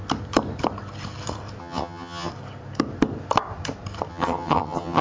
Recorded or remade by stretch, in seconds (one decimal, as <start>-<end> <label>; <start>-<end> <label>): 0.0-1.6 recorded; 1.6-2.3 remade; 2.3-4.1 recorded; 4.1-5.0 remade